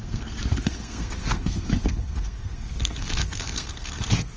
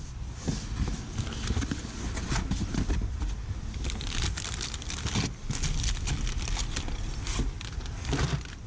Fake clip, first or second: first